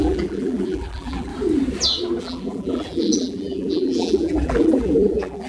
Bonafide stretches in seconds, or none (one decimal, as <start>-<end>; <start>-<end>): 1.3-2.2